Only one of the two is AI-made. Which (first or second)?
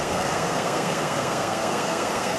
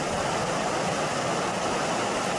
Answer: first